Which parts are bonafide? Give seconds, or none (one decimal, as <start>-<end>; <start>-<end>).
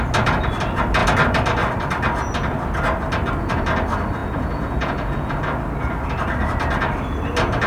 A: 0.0-4.2; 5.4-7.7